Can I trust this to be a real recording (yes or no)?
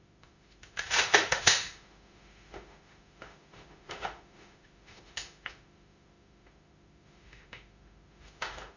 no